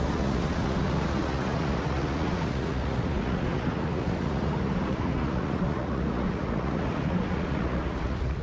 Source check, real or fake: fake